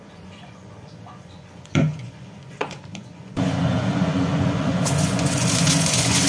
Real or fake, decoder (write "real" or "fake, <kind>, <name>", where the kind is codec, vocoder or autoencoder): fake, vocoder, Vocos